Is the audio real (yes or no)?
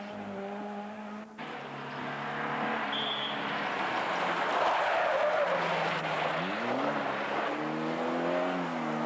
yes